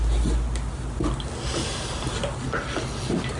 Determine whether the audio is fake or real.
real